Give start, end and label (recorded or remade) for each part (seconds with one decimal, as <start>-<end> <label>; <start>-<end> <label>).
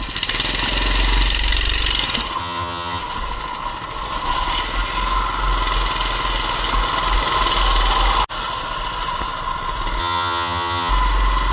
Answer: 0.0-2.4 recorded; 2.4-3.0 remade; 3.0-10.0 recorded; 10.0-10.9 remade; 10.9-11.5 recorded